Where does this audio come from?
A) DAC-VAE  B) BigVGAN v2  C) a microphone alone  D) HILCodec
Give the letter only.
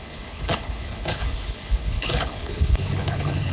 D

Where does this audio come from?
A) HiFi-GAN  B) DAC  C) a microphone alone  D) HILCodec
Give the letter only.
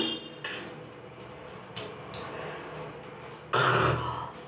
C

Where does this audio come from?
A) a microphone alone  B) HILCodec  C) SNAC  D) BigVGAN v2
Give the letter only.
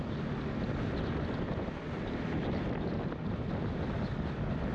A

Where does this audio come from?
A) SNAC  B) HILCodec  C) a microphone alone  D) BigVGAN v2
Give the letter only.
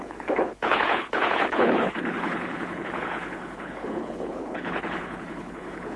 B